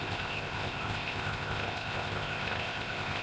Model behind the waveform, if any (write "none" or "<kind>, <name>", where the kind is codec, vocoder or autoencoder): codec, ZipCodec